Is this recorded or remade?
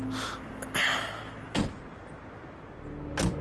recorded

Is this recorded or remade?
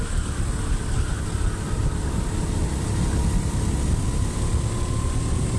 recorded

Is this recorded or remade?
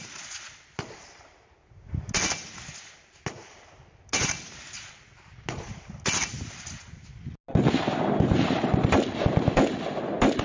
recorded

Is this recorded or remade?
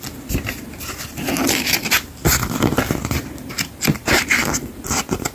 remade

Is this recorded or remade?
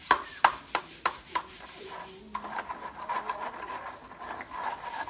recorded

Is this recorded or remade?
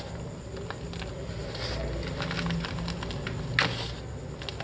recorded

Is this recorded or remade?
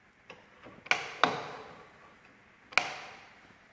recorded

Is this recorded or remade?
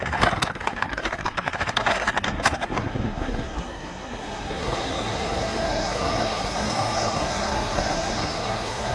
remade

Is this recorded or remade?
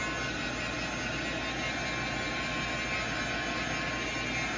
recorded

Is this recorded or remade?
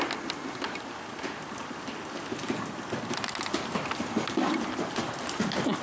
recorded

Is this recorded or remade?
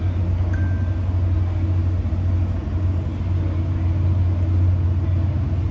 recorded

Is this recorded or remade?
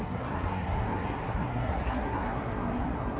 remade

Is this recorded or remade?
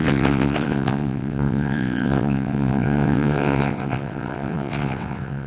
remade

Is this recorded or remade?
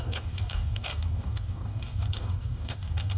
remade